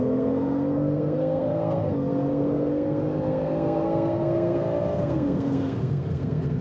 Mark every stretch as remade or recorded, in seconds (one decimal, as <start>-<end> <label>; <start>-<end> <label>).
0.0-6.6 remade

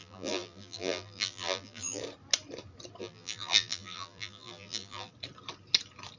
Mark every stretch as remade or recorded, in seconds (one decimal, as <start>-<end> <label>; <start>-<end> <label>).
0.0-2.0 remade; 2.0-3.0 recorded; 3.0-5.1 remade; 5.1-6.2 recorded

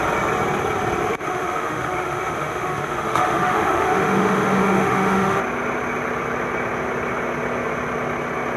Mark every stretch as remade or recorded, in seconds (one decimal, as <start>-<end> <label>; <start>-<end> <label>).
0.0-1.0 recorded; 1.0-5.4 remade; 5.4-8.6 recorded

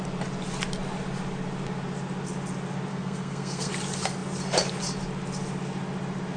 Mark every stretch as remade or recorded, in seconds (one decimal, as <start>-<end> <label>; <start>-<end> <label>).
0.0-2.9 recorded; 2.9-3.7 remade; 3.7-6.4 recorded

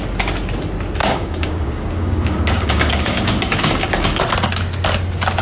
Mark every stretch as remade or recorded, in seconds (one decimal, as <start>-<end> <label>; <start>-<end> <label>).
0.0-1.0 recorded; 1.0-4.2 remade; 4.2-5.4 recorded